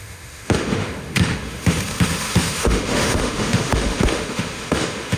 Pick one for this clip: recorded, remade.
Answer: remade